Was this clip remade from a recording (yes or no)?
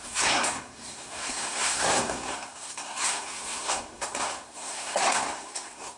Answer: yes